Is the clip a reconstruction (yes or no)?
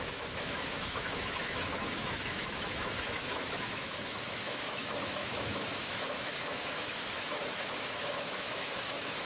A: yes